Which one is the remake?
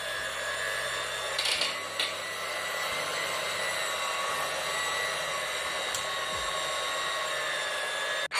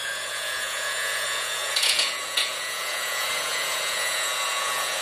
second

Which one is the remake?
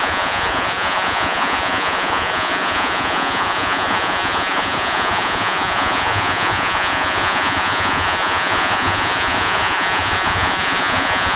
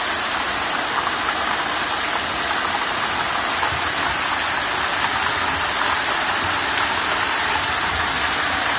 first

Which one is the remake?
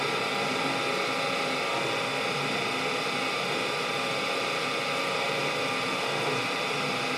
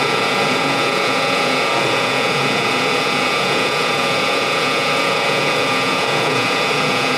second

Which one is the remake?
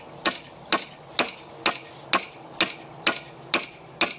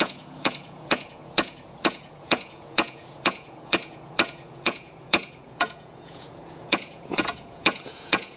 second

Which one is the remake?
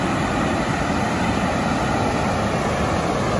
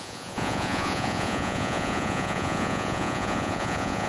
second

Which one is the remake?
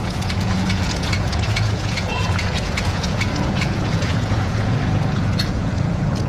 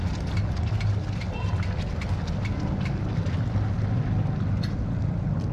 first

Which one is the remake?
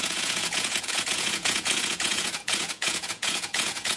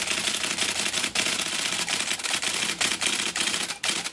first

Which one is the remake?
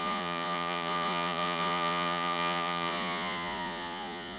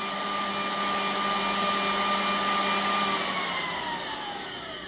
first